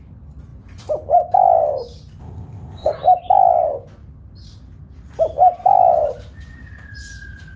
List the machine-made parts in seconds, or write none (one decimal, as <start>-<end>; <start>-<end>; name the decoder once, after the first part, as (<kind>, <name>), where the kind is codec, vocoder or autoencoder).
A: 2.2-2.9 (codec, ZipCodec)

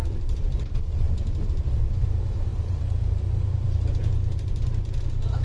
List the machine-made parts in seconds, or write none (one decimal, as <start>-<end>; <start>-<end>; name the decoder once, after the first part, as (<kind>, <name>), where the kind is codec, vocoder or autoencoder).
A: 0.0-1.8 (vocoder, BigVGAN v2); 2.5-5.0

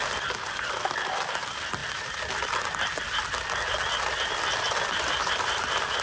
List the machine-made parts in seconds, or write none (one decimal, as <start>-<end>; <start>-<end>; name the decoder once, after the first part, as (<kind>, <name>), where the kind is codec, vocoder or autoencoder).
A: none

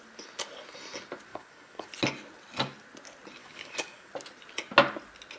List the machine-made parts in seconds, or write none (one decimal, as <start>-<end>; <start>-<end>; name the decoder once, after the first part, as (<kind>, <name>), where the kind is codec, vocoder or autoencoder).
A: 1.3-1.9 (codec, DAC); 3.4-4.1

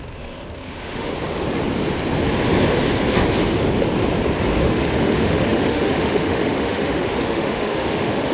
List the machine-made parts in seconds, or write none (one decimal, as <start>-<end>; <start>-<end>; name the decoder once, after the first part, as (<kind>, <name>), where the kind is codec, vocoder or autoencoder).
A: 0.0-1.1 (autoencoder, DAC-VAE); 4.6-8.3

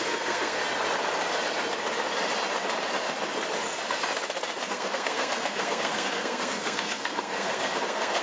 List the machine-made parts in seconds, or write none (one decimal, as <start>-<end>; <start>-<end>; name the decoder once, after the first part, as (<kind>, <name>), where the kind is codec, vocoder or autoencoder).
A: 0.0-0.6 (codec, SNAC); 4.7-8.2